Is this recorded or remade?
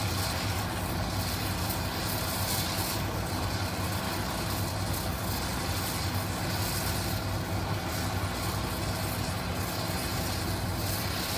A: recorded